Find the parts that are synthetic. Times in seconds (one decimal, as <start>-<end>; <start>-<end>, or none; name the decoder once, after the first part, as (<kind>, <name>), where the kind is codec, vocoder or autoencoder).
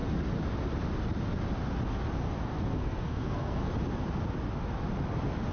2.5-3.7 (codec, SNAC)